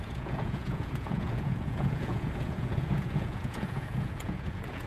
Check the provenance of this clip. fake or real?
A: fake